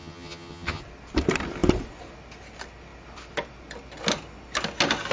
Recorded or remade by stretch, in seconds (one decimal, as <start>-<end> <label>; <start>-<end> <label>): 0.0-0.8 remade; 0.8-5.1 recorded